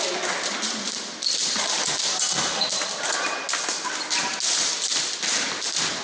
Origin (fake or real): real